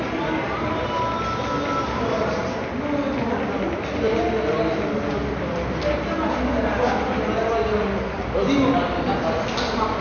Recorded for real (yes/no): yes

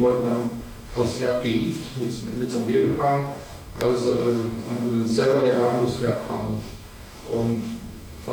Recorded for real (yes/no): no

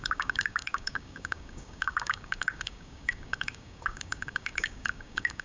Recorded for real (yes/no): no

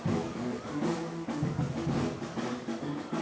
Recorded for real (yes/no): no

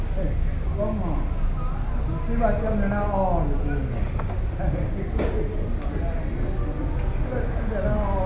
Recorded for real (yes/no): yes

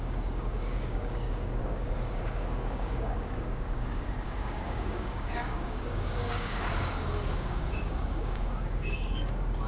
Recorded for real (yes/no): no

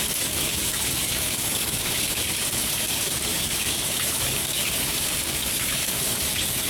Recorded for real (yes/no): no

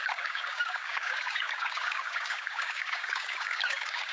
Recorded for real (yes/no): no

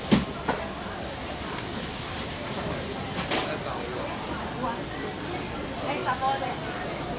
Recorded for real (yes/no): yes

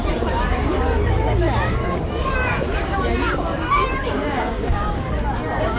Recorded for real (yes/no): no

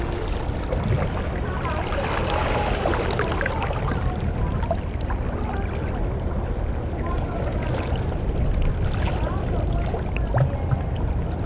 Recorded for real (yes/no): yes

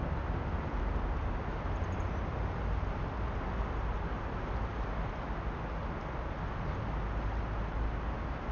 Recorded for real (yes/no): yes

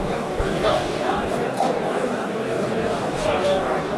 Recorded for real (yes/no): no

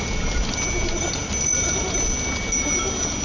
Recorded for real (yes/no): yes